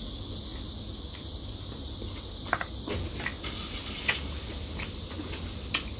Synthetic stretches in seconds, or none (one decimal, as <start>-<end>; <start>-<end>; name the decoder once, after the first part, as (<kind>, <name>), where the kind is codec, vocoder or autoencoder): none